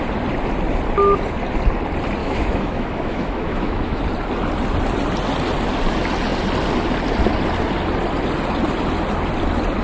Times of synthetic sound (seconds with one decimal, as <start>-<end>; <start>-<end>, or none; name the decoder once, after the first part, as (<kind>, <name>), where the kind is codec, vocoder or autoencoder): 2.2-4.0 (autoencoder, DAC-VAE)